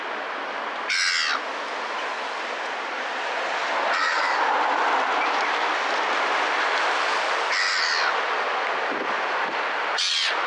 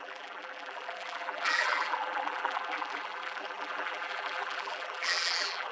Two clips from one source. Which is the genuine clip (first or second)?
first